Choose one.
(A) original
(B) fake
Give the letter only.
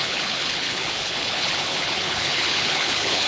B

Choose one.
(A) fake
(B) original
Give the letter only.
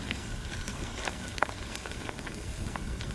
A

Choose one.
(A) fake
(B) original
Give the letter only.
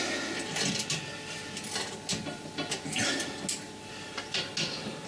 B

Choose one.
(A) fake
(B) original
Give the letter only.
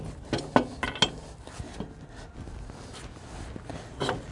B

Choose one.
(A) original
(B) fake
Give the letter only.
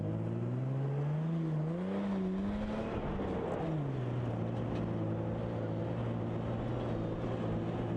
A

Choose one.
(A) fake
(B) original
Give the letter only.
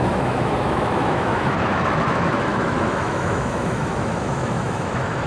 A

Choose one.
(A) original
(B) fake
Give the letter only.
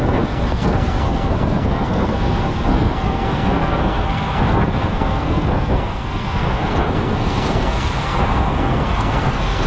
B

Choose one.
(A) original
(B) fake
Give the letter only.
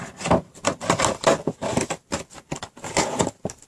A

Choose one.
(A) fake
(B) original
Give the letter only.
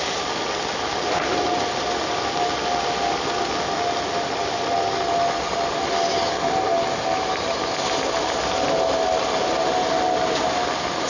B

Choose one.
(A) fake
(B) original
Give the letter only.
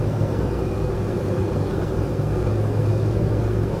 A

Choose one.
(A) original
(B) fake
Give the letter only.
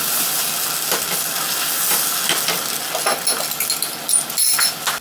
A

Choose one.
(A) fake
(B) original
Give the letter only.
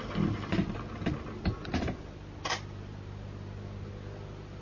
B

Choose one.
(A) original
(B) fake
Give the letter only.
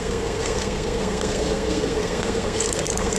B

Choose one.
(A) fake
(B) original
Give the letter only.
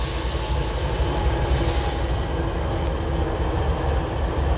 B